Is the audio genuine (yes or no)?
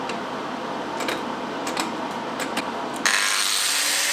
yes